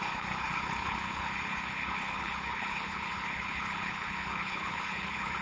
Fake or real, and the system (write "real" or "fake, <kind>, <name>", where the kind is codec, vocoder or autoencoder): fake, codec, HILCodec